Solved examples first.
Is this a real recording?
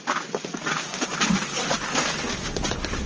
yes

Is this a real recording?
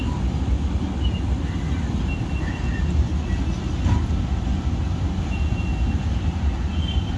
yes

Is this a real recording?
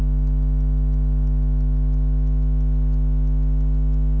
yes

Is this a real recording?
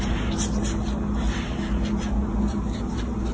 yes